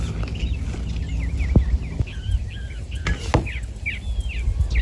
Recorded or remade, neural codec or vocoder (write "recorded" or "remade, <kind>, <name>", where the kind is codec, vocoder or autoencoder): recorded